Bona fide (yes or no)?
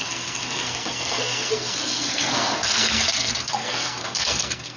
no